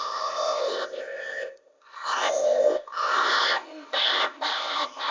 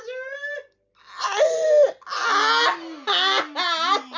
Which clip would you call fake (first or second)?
first